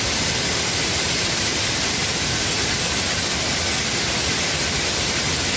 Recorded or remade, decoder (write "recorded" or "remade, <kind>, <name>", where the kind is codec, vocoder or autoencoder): recorded